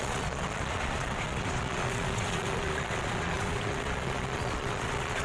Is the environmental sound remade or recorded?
remade